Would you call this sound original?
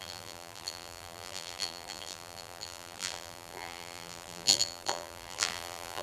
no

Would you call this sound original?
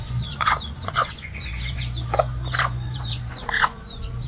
no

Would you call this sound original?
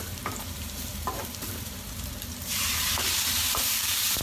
no